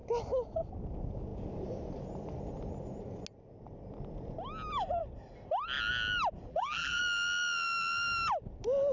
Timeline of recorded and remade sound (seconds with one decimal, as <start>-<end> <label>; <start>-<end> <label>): 0.0-6.5 recorded; 6.5-7.0 remade; 7.0-8.9 recorded